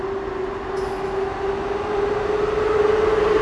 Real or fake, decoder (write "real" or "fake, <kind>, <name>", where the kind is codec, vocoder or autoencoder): real